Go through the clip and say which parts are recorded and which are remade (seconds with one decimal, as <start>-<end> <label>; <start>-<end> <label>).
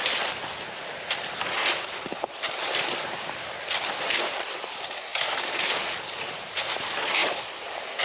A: 0.0-8.0 recorded